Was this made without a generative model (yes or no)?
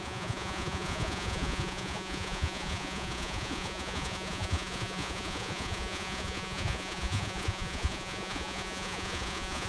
no